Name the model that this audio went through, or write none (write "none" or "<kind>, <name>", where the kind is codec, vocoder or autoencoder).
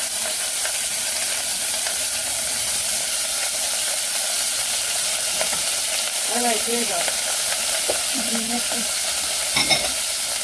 vocoder, BigVGAN v2